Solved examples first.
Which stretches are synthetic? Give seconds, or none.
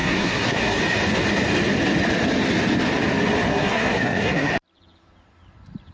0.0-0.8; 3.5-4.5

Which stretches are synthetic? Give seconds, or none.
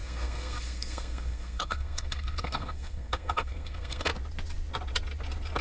0.0-4.1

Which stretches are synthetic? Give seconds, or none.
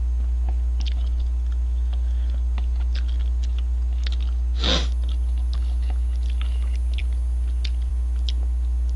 none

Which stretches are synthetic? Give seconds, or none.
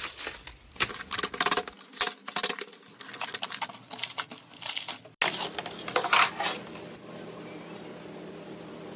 none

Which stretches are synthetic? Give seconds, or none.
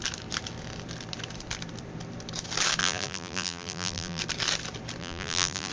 2.8-4.2; 5.0-5.7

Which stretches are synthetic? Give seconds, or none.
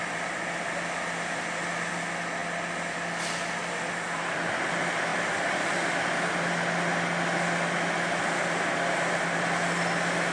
none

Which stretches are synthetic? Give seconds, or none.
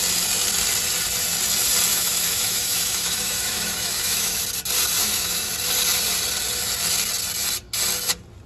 1.9-4.4; 5.0-5.5